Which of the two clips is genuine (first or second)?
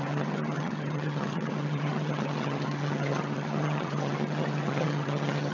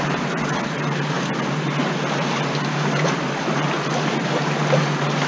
second